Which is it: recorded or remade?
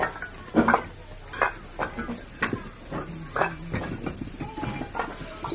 recorded